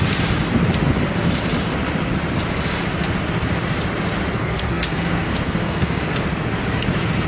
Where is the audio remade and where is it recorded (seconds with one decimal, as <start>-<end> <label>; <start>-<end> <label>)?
0.0-4.3 recorded; 4.3-6.0 remade; 6.0-7.3 recorded